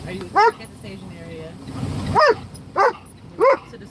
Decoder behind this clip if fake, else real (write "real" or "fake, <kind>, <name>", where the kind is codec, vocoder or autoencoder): real